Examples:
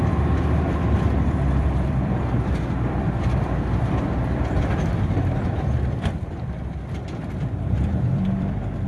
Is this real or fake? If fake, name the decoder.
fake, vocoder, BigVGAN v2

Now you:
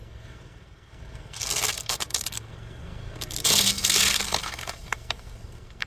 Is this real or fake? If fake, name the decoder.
fake, codec, SNAC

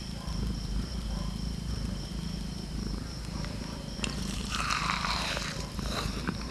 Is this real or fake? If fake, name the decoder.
fake, vocoder, BigVGAN v2